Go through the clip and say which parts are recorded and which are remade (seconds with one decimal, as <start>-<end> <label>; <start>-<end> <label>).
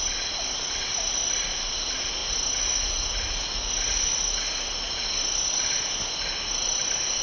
0.0-7.2 recorded